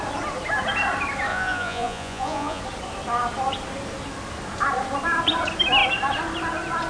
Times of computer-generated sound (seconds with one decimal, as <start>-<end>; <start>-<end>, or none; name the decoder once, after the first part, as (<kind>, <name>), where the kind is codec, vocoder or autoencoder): 1.3-2.6 (vocoder, Vocos)